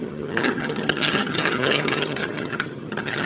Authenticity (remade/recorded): remade